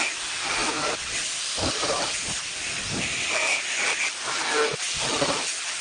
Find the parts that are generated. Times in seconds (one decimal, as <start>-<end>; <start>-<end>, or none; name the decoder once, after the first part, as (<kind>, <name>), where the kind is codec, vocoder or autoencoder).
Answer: 0.6-4.1 (vocoder, BigVGAN v2)